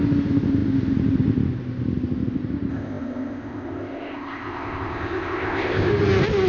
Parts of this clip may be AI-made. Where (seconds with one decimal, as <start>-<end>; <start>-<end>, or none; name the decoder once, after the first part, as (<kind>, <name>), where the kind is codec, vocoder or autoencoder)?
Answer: 2.7-5.9 (codec, ZipCodec)